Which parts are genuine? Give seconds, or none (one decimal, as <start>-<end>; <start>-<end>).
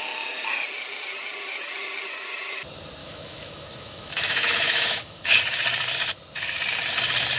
0.0-3.0; 5.4-7.4